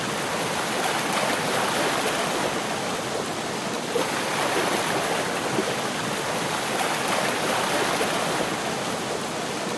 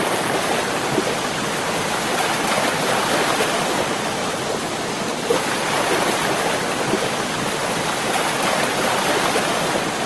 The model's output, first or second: second